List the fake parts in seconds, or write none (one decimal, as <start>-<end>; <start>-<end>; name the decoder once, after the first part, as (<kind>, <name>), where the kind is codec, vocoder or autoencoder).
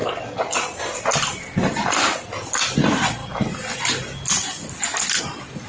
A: none